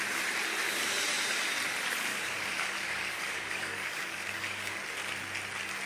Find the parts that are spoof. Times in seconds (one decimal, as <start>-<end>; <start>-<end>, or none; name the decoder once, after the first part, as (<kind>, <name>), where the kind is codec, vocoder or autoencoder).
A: 2.1-4.8 (codec, DAC)